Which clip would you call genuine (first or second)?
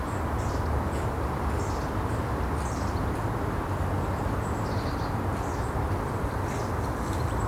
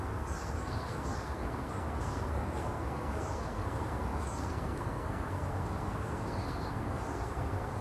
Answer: first